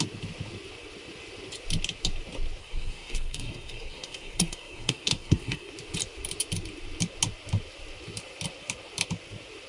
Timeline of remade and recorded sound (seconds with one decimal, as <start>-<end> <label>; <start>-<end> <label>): 0.0-2.6 recorded; 2.6-5.7 remade; 5.7-9.7 recorded